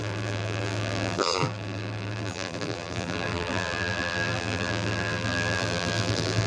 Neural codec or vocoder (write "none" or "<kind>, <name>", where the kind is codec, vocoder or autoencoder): vocoder, BigVGAN v2